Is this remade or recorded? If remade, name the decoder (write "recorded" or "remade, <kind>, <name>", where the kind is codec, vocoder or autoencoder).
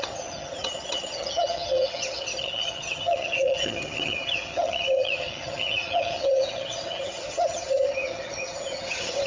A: remade, vocoder, HiFi-GAN